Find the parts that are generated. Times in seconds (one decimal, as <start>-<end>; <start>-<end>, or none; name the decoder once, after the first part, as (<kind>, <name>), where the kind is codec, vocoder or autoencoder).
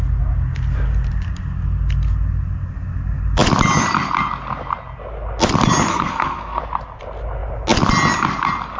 5.9-6.6 (codec, SNAC)